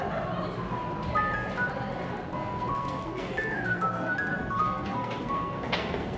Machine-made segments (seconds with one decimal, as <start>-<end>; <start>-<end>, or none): 2.3-6.2